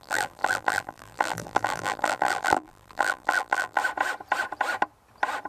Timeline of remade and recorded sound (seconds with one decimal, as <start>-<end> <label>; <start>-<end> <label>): 0.0-3.8 remade; 3.8-5.5 recorded